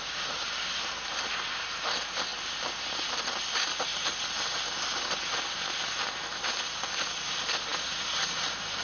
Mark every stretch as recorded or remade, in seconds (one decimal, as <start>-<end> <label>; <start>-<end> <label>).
0.0-8.8 recorded